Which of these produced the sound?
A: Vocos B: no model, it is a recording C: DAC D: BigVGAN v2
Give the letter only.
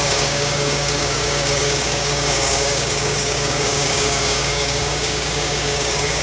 C